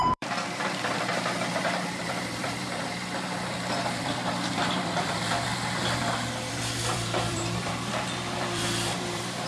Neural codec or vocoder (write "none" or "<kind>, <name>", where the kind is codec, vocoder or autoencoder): vocoder, BigVGAN v2